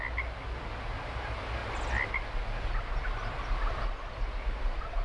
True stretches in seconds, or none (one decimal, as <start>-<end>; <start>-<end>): 0.0-5.0